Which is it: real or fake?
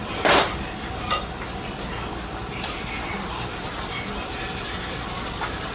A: real